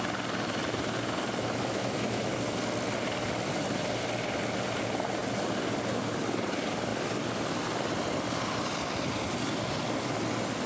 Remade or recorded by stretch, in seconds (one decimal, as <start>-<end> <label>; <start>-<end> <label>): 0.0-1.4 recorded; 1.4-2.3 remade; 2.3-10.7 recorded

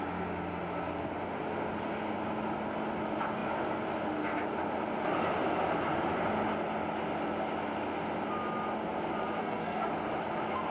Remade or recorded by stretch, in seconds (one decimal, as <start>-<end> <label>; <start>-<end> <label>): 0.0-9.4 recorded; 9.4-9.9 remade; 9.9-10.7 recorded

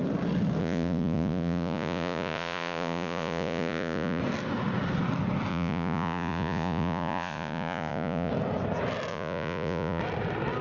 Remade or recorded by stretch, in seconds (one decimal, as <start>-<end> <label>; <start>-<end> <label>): 0.0-0.6 recorded; 0.6-4.2 remade; 4.2-5.5 recorded; 5.5-8.3 remade; 8.3-9.1 recorded; 9.1-10.0 remade; 10.0-10.6 recorded

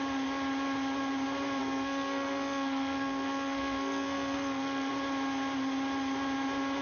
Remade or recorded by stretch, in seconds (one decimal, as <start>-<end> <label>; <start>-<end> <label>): 0.0-1.6 recorded; 1.6-4.9 remade; 4.9-6.8 recorded

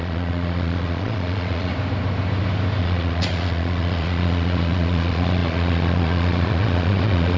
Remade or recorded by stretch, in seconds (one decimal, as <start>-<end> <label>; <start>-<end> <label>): 0.0-1.7 remade; 1.7-2.8 recorded; 2.8-7.4 remade

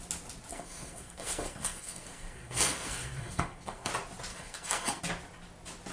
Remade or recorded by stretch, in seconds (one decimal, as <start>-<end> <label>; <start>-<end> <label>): 0.0-0.5 recorded; 0.5-3.9 remade; 3.9-4.3 recorded; 4.3-5.0 remade; 5.0-5.9 recorded